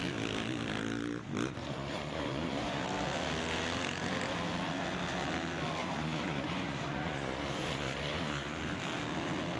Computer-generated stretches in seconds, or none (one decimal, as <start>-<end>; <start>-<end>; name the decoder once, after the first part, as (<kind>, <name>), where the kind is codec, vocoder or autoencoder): 1.6-2.8 (vocoder, Vocos); 5.8-8.6